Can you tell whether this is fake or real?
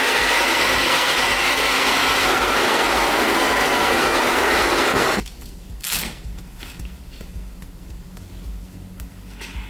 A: fake